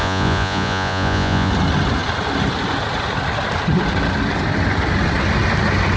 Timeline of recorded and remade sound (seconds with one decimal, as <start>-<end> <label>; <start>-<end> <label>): 0.0-1.5 remade; 1.5-6.0 recorded